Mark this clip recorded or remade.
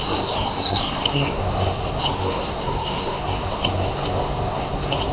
remade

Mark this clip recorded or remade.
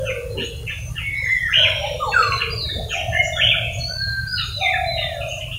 recorded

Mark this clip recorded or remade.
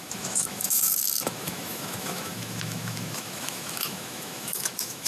remade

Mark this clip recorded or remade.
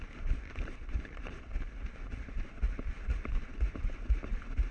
recorded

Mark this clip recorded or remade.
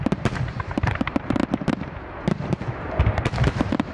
remade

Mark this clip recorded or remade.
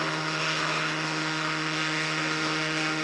remade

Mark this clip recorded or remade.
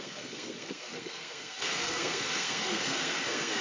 remade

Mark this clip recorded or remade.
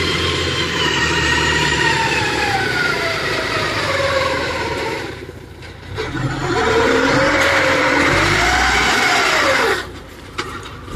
remade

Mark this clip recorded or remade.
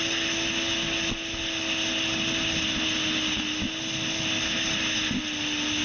recorded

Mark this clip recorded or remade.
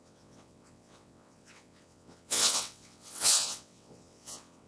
remade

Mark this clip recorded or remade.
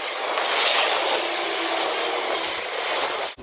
recorded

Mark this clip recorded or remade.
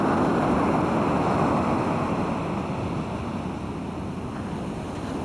recorded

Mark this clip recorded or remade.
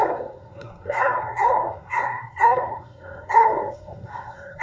remade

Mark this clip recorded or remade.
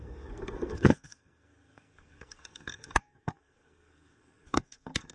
remade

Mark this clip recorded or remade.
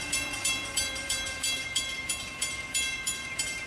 remade